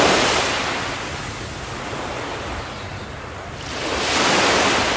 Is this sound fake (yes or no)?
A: no